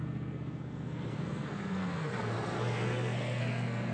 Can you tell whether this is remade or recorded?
remade